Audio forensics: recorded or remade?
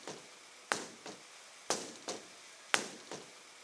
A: recorded